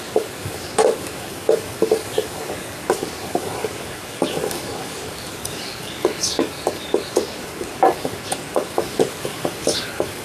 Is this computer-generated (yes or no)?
yes